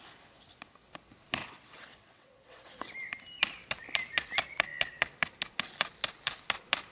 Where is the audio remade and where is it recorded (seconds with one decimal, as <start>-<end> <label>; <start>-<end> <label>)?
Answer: 0.0-1.4 recorded; 1.4-2.7 remade; 2.7-6.9 recorded